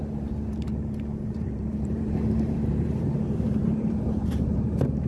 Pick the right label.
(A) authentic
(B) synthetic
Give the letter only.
B